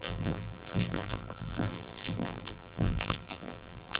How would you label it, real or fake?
fake